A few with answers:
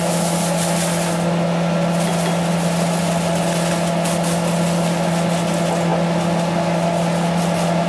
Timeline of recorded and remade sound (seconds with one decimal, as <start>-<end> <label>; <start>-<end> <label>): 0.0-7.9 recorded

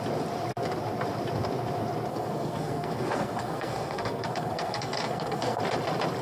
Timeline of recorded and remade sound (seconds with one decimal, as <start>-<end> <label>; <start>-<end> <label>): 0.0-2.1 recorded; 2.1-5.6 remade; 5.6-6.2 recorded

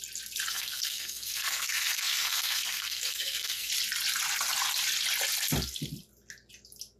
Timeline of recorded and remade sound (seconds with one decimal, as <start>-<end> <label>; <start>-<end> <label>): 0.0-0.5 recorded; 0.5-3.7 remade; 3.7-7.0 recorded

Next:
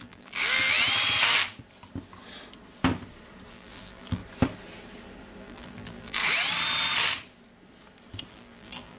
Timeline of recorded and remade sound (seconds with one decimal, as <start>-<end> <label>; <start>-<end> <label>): 0.0-0.8 remade; 0.8-3.5 recorded; 3.5-4.2 remade; 4.2-5.4 recorded; 5.4-6.2 remade; 6.2-8.3 recorded; 8.3-9.0 remade